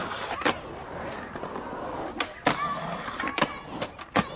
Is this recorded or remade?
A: recorded